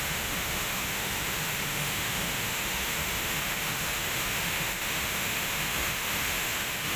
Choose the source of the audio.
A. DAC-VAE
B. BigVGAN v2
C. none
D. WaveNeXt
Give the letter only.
A